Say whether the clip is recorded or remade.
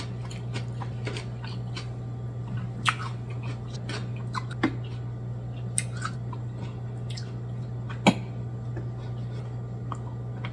recorded